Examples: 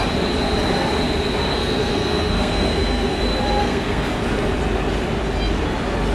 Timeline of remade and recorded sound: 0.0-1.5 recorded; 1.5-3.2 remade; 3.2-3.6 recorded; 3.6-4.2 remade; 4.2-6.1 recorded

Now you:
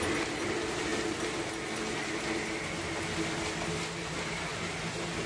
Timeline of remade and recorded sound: 0.0-5.3 recorded

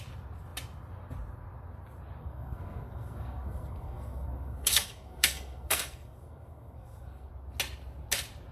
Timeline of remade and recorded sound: 0.0-2.2 recorded; 2.2-7.3 remade; 7.3-8.5 recorded

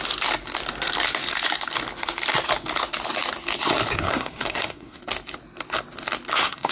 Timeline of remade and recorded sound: 0.0-4.0 recorded; 4.0-5.0 remade; 5.0-6.3 recorded; 6.3-6.7 remade